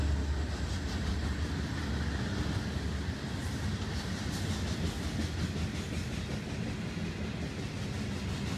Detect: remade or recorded recorded